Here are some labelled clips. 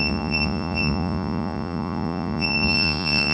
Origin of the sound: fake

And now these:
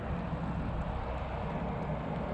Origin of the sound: real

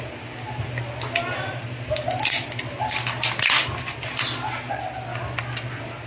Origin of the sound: real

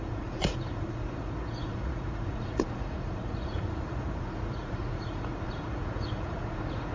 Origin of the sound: fake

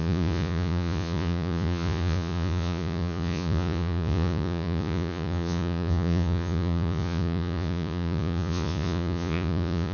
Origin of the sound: fake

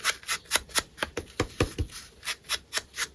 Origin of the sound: real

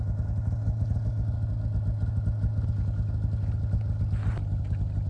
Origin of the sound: real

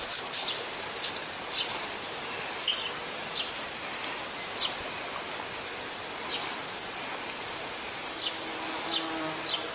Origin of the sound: real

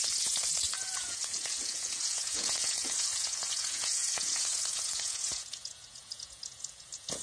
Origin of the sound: fake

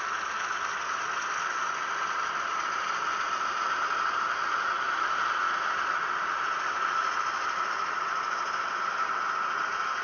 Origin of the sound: real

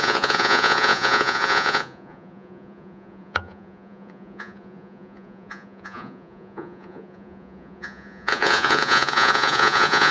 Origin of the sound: fake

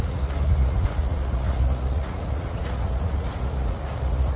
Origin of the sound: fake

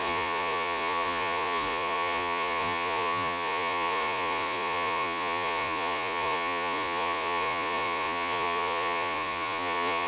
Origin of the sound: fake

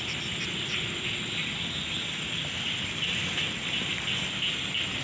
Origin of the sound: real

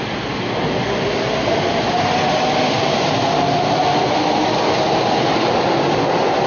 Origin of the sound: real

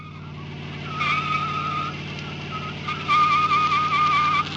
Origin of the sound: real